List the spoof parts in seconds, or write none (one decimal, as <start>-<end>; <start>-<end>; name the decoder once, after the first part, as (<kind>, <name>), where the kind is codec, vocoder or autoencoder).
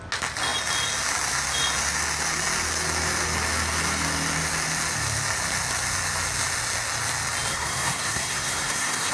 7.5-9.1 (codec, SNAC)